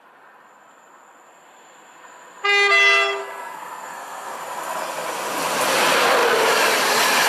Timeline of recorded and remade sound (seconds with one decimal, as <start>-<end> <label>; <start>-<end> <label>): 0.0-3.2 recorded; 3.2-4.4 remade; 4.4-7.3 recorded